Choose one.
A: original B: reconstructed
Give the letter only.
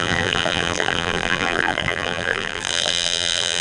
B